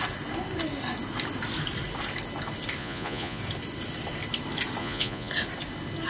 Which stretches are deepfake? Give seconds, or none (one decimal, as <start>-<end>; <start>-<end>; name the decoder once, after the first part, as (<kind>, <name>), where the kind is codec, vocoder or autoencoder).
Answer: 2.8-3.4 (vocoder, Vocos); 4.8-5.3